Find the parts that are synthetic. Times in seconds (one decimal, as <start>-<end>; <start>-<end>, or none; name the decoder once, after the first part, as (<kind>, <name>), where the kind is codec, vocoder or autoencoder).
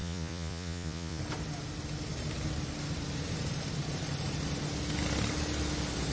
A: 0.0-1.2 (vocoder, Vocos)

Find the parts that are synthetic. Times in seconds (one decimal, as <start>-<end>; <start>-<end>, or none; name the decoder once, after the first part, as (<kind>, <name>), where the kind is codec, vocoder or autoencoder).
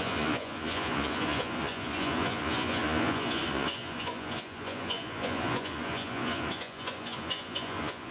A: 0.0-8.1 (vocoder, Vocos)